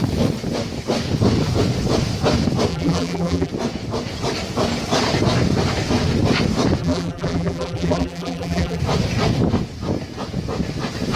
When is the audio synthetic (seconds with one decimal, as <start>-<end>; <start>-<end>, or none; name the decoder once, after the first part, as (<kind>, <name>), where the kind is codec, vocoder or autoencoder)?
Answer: 2.7-3.5 (vocoder, BigVGAN v2); 6.8-8.8